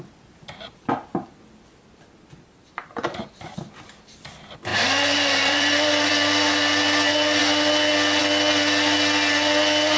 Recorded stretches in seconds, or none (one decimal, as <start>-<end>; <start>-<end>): 0.0-2.6; 3.2-4.7; 6.1-10.0